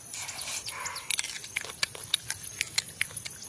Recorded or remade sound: recorded